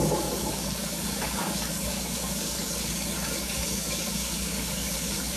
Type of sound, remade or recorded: remade